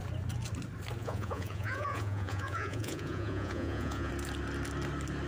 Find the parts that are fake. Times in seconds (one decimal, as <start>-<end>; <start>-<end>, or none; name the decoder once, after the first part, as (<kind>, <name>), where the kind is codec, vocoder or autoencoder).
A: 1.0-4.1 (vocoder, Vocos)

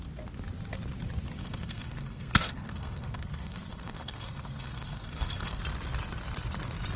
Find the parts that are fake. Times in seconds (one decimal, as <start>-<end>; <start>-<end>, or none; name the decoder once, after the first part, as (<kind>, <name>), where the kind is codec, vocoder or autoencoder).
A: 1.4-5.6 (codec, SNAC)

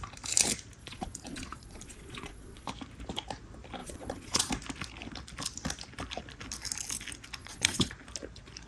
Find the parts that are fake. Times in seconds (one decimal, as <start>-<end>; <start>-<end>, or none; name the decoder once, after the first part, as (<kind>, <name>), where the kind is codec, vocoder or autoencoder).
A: 0.8-2.7 (vocoder, Vocos); 3.8-4.5; 7.4-7.9

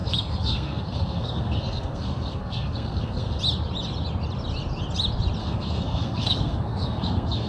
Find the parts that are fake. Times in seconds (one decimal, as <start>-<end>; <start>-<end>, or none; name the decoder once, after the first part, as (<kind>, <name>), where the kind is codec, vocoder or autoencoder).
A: 0.0-3.4 (codec, SNAC); 5.4-7.5

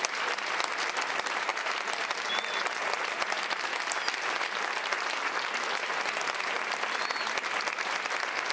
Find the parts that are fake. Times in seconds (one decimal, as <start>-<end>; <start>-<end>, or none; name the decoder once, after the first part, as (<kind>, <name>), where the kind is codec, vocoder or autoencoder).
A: none

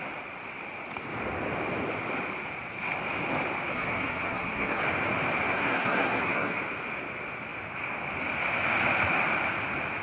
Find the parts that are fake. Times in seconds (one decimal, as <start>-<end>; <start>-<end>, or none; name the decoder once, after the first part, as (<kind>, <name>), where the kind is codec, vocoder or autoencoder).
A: 3.7-4.8 (codec, SNAC); 5.5-6.6

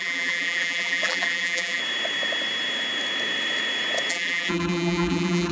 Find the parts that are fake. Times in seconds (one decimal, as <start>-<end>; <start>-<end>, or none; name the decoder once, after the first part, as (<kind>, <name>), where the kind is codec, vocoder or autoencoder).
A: 0.0-1.8 (vocoder, BigVGAN v2); 4.1-5.5